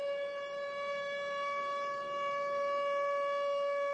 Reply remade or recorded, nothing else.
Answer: recorded